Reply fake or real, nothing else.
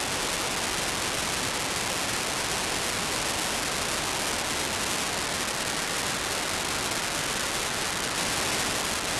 real